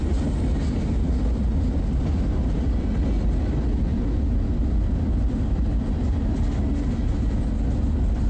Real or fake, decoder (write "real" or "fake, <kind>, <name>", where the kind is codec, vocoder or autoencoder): real